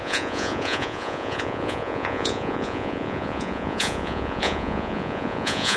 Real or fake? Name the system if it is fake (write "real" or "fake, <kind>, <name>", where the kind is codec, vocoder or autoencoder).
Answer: fake, vocoder, Vocos